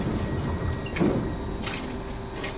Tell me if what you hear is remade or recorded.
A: recorded